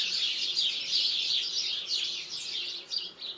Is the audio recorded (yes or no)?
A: yes